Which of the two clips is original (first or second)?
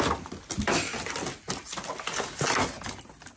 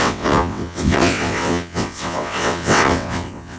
first